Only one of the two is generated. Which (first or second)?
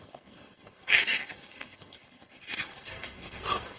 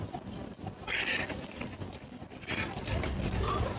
first